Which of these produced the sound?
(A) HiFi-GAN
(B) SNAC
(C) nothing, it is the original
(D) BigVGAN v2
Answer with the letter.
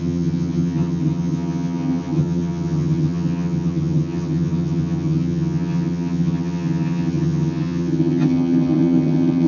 A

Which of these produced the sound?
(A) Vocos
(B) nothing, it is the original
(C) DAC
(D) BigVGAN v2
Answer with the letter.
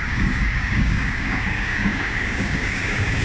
C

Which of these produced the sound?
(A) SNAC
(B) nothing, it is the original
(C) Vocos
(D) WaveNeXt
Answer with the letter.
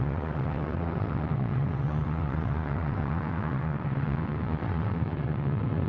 D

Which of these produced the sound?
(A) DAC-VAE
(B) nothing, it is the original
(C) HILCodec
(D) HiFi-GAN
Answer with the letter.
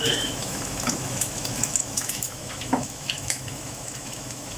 A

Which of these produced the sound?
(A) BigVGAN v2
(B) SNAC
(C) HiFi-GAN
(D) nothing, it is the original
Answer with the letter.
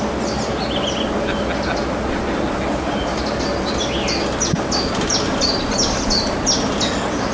D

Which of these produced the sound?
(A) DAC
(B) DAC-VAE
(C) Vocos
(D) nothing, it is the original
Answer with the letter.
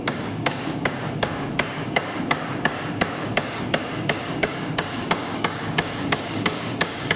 A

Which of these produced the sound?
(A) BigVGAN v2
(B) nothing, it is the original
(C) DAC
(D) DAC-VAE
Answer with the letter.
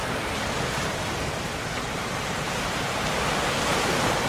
B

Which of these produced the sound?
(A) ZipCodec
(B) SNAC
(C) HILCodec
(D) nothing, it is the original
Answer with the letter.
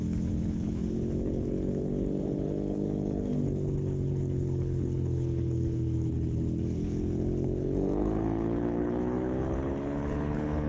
C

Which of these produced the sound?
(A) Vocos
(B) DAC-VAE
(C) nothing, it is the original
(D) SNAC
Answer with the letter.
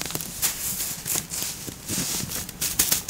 C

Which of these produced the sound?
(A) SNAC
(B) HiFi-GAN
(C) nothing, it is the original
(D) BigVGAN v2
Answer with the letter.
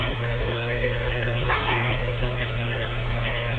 A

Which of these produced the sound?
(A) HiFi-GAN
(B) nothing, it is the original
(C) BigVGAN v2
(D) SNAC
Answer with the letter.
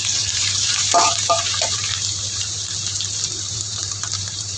C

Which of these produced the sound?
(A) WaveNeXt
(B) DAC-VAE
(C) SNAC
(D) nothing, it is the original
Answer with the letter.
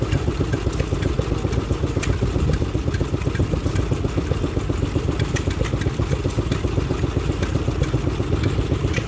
D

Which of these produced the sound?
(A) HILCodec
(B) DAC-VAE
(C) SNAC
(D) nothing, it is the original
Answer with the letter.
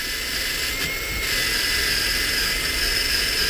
D